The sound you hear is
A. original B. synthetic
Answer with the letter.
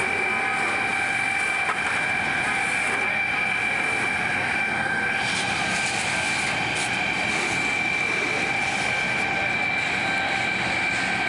A